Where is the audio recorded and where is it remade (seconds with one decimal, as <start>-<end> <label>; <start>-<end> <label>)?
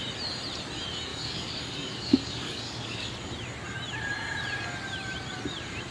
0.0-1.1 recorded; 1.1-3.1 remade; 3.1-5.9 recorded